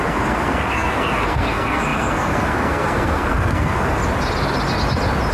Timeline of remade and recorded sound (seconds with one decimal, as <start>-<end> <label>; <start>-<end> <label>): 0.0-4.0 remade; 4.0-5.3 recorded

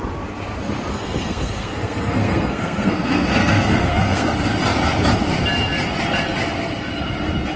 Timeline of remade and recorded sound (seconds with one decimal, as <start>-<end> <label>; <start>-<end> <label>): 0.0-0.9 recorded; 0.9-4.3 remade; 4.3-7.6 recorded

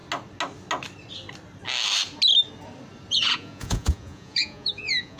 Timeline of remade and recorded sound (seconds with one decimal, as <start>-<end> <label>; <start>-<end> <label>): 0.0-3.1 recorded; 3.1-5.2 remade

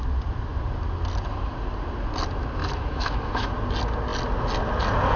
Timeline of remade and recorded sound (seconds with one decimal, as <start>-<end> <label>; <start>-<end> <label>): 0.0-2.6 recorded; 2.6-3.5 remade; 3.5-5.2 recorded